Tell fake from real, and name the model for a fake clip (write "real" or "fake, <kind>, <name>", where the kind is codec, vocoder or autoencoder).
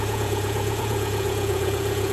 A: fake, vocoder, Vocos